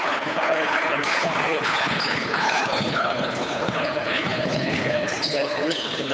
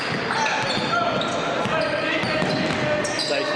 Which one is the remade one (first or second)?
first